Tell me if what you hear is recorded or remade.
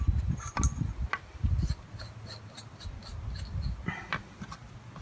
recorded